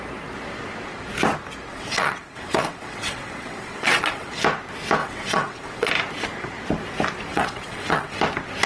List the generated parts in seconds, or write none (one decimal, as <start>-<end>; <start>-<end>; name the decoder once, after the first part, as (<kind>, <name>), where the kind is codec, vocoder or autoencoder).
1.7-4.4 (vocoder, WaveNeXt); 5.0-5.9; 7.3-8.2